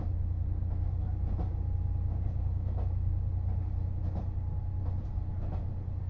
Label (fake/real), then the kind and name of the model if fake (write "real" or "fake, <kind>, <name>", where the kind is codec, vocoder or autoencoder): real